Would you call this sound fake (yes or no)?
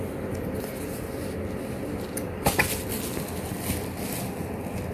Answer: no